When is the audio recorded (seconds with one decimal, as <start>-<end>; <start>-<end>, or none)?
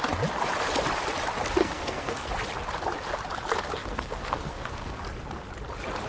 0.0-1.6; 2.3-3.8; 5.0-6.1